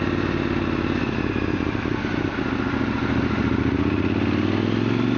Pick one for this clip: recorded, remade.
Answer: recorded